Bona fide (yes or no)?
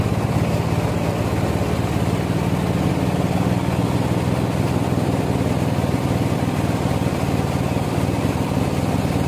yes